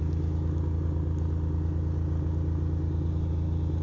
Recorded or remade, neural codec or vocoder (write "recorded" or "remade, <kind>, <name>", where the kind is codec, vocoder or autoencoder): recorded